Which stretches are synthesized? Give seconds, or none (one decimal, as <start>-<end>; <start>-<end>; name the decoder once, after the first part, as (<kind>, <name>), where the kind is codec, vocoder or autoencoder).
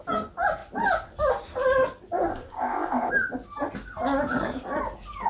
2.3-3.1 (codec, ZipCodec)